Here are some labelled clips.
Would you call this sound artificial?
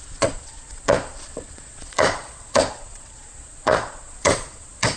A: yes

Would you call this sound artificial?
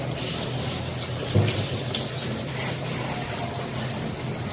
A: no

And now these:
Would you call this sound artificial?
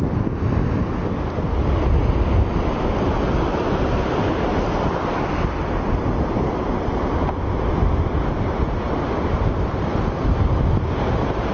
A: no